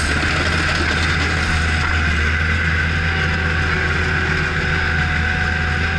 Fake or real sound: real